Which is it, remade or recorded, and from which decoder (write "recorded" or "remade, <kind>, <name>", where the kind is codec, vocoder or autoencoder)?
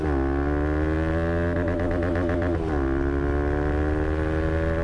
recorded